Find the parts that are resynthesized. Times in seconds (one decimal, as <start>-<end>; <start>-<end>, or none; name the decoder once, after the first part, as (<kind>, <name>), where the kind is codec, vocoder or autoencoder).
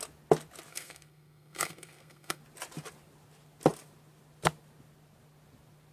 0.7-2.4 (codec, SNAC)